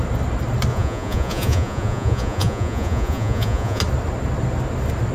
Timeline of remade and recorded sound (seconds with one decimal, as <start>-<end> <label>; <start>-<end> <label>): 0.0-0.7 recorded; 0.7-3.8 remade; 3.8-5.1 recorded